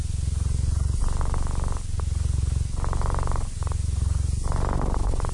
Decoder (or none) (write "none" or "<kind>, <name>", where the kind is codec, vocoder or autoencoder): none